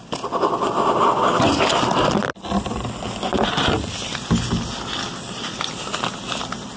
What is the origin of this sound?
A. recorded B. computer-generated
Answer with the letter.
A